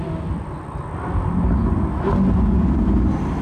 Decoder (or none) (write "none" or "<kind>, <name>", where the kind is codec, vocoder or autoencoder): none